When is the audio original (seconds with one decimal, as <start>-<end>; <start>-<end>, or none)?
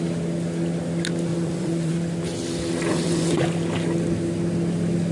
0.0-1.3; 1.9-2.9; 3.4-5.1